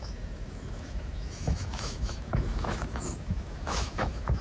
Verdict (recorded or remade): remade